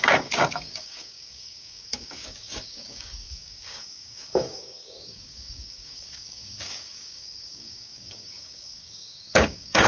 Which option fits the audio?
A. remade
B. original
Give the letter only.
A